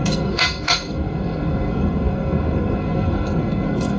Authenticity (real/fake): fake